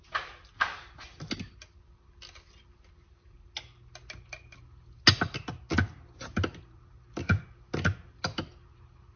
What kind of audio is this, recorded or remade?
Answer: recorded